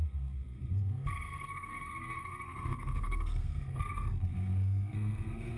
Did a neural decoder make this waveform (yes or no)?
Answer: yes